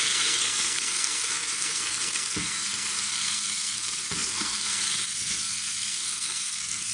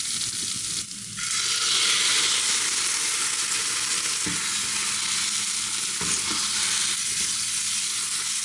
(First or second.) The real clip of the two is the second